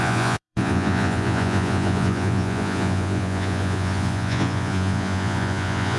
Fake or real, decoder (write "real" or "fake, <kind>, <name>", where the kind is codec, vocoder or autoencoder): fake, vocoder, Vocos